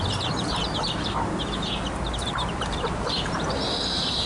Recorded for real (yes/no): no